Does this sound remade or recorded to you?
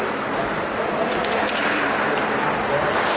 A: recorded